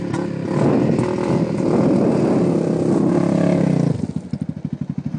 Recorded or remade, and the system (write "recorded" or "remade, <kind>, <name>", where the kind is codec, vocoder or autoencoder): recorded